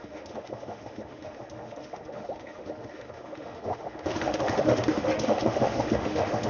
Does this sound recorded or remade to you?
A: remade